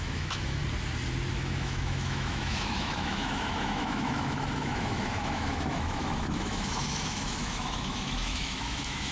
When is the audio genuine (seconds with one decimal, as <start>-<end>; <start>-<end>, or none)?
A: 0.6-1.3